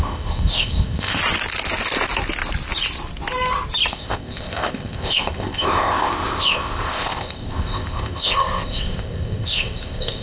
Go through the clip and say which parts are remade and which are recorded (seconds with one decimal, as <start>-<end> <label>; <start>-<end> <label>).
0.0-1.2 remade; 1.2-3.9 recorded; 3.9-10.2 remade